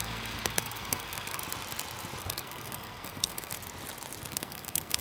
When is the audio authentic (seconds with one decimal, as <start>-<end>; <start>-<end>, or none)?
1.4-2.2; 3.5-4.3